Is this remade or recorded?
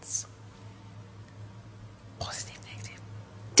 recorded